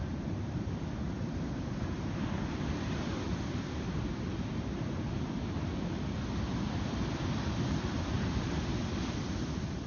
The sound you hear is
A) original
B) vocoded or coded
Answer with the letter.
A